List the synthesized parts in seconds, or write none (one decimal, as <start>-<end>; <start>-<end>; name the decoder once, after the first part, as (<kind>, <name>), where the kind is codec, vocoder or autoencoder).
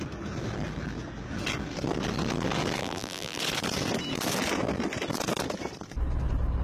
2.8-3.4 (vocoder, BigVGAN v2)